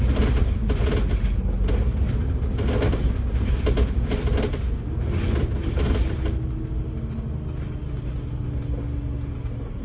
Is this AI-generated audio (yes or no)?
no